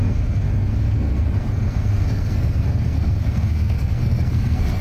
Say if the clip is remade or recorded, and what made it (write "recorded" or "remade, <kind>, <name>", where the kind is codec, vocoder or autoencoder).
remade, codec, SNAC